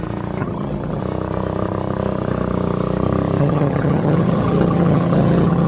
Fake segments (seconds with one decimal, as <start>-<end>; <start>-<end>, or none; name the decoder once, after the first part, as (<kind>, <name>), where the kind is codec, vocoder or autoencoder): 0.4-1.0 (vocoder, HiFi-GAN); 3.4-5.7